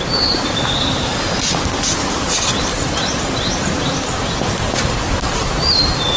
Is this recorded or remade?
recorded